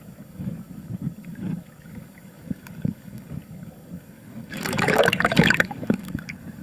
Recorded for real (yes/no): no